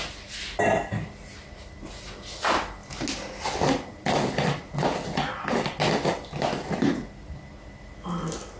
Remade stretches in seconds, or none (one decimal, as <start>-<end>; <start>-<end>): none